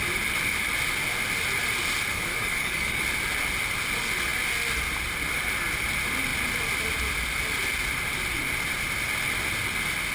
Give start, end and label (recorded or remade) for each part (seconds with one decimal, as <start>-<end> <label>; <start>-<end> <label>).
0.0-2.1 recorded; 2.1-3.0 remade; 3.0-10.1 recorded